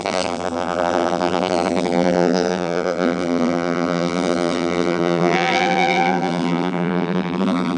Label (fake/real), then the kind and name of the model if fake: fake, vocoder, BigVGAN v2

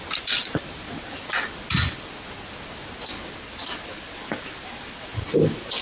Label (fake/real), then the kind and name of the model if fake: real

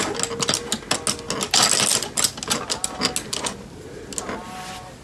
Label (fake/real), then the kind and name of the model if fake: real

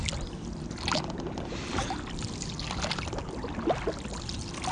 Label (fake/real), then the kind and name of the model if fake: real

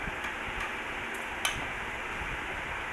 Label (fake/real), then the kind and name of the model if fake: real